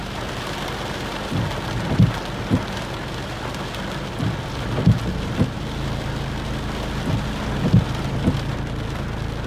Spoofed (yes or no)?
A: no